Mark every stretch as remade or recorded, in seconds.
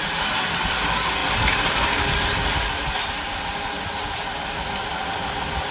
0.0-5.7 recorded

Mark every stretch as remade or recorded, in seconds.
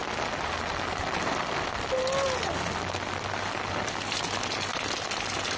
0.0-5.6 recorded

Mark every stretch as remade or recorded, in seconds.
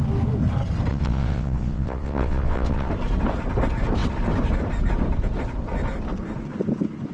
0.0-0.9 recorded; 0.9-2.9 remade; 2.9-7.1 recorded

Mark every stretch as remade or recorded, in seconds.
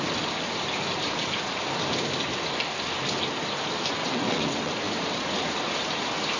0.0-4.0 recorded; 4.0-4.7 remade; 4.7-6.4 recorded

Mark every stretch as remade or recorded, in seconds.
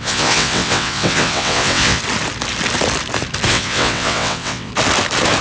0.0-2.0 remade; 2.0-3.5 recorded; 3.5-4.7 remade; 4.7-5.4 recorded